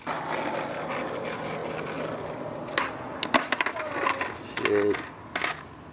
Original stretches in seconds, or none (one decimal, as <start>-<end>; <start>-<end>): 0.0-5.9